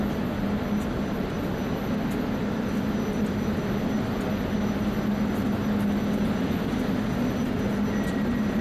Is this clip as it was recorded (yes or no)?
yes